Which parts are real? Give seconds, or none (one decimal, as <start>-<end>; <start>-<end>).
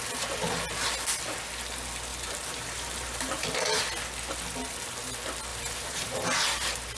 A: 0.0-2.1; 3.8-5.5; 6.1-7.0